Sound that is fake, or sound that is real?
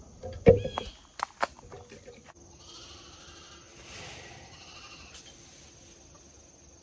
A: real